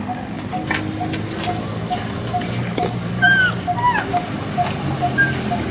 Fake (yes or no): no